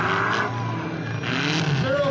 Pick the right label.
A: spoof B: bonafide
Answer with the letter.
B